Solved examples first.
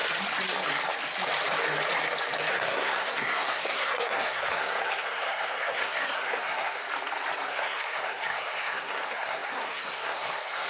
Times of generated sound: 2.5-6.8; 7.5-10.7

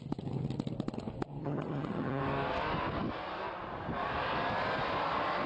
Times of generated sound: 1.4-2.2

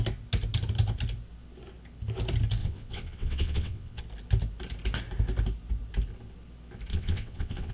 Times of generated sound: 2.6-4.0; 6.9-7.7

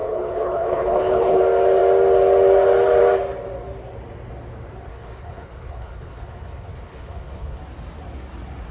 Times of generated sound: 0.0-1.4; 4.9-7.6

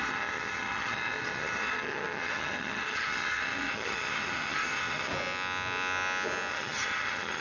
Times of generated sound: 0.0-5.1; 6.5-7.4

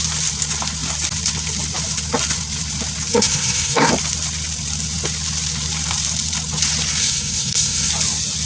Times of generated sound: 3.1-3.9; 7.0-7.9

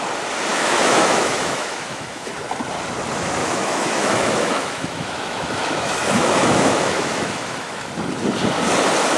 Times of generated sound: 0.5-2.3; 3.4-7.9